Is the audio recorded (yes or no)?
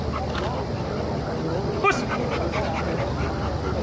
yes